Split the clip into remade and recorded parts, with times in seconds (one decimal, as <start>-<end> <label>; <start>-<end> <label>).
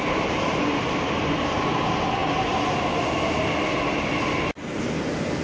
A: 0.0-5.4 recorded